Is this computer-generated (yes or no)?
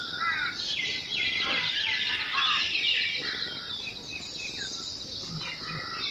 no